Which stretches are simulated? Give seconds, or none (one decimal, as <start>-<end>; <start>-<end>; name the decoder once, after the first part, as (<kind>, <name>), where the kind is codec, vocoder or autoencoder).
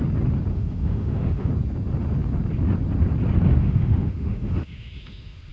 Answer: 0.5-1.5 (autoencoder, DAC-VAE); 3.6-5.5